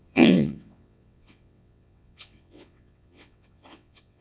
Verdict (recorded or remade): remade